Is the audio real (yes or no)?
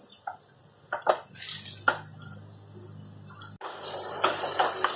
yes